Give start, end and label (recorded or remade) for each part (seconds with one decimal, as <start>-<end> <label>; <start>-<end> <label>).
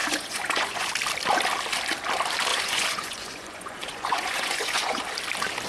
0.0-0.9 remade; 0.9-2.5 recorded; 2.5-5.0 remade; 5.0-5.7 recorded